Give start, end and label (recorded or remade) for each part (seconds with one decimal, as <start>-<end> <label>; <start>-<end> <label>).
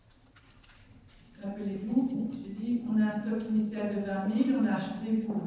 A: 0.0-5.5 recorded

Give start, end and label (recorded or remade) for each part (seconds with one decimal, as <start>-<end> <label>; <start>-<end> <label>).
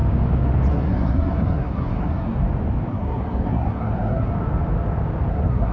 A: 0.0-0.7 recorded; 0.7-2.4 remade; 2.4-2.9 recorded; 2.9-4.3 remade; 4.3-5.3 recorded; 5.3-5.7 remade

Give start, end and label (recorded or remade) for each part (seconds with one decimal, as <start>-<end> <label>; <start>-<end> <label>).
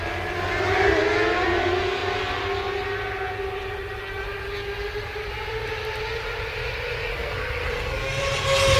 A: 0.0-7.1 recorded; 7.1-8.2 remade; 8.2-8.8 recorded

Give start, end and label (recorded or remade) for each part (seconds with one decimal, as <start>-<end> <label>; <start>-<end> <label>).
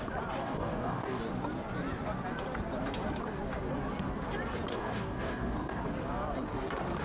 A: 0.0-0.4 recorded; 0.4-1.2 remade; 1.2-4.7 recorded; 4.7-5.8 remade; 5.8-7.0 recorded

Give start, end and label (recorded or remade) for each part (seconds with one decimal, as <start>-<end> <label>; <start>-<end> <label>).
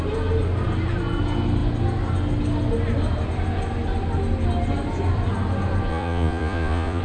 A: 0.0-5.9 recorded; 5.9-7.0 remade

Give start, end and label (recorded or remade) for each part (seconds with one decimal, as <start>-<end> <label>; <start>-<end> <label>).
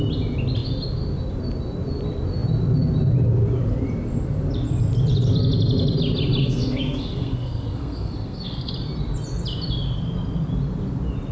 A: 0.0-6.4 recorded; 6.4-8.7 remade; 8.7-11.3 recorded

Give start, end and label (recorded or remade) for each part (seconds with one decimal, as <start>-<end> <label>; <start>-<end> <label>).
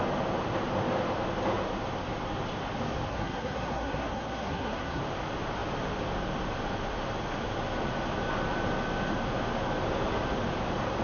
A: 0.0-3.1 recorded; 3.1-5.0 remade; 5.0-11.0 recorded